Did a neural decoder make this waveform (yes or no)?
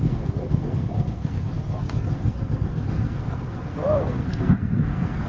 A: yes